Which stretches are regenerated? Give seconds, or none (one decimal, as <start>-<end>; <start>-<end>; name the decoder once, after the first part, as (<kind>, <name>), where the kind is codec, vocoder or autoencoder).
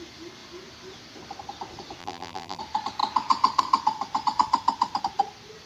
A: 2.0-2.6 (vocoder, BigVGAN v2)